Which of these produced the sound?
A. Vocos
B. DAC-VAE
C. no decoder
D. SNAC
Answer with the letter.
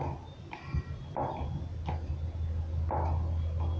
C